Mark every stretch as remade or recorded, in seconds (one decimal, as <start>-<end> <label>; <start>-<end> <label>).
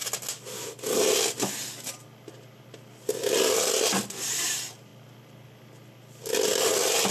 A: 0.0-4.3 recorded; 4.3-4.9 remade; 4.9-7.1 recorded